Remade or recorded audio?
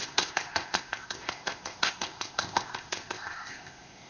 remade